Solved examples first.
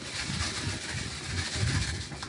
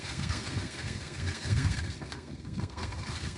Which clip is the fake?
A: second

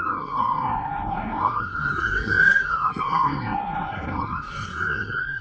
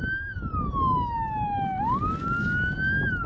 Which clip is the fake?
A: first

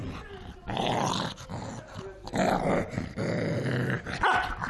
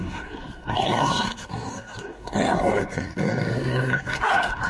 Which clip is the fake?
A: second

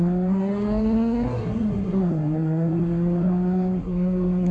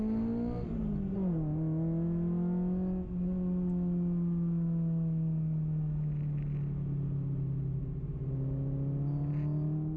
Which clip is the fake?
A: first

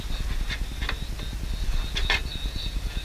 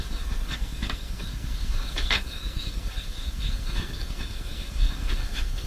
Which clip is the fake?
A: second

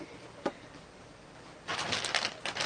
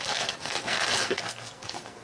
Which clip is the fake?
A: second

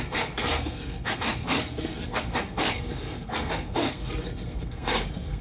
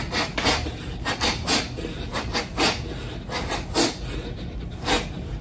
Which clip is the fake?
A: first